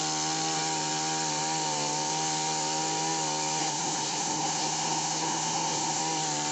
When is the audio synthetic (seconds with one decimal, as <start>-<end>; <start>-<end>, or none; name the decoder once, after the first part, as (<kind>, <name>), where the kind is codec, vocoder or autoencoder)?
3.6-6.0 (codec, SNAC)